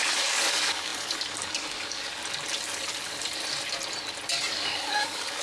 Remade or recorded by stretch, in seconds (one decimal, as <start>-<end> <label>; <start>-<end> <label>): 0.0-2.2 remade; 2.2-4.5 recorded; 4.5-5.4 remade